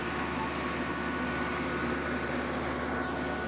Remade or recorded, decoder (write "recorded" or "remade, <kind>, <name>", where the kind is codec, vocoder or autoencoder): recorded